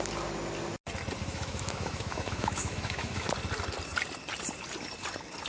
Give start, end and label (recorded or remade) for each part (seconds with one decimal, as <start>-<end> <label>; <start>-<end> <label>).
0.0-1.2 recorded; 1.2-3.3 remade; 3.3-5.5 recorded